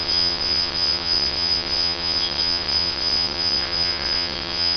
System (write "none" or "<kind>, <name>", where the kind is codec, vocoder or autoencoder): vocoder, WaveNeXt